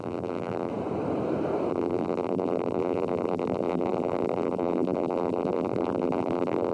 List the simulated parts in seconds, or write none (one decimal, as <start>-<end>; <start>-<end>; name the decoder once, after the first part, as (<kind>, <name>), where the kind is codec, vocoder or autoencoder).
0.0-0.7 (vocoder, BigVGAN v2); 1.7-6.7